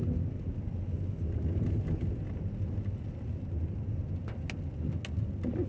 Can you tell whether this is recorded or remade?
recorded